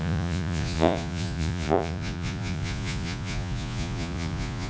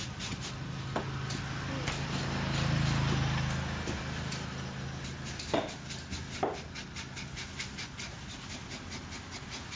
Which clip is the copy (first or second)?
first